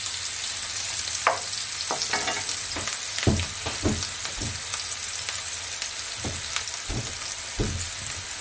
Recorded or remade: recorded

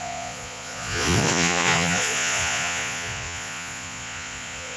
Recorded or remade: remade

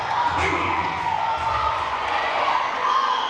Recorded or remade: remade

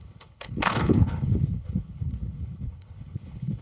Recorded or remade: remade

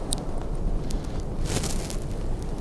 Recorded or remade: recorded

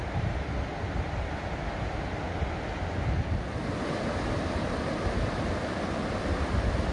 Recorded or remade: recorded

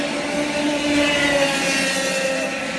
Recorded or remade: recorded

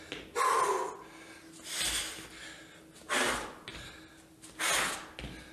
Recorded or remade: recorded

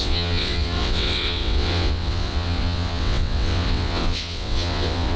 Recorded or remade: remade